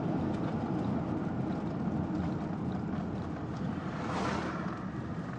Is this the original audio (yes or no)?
yes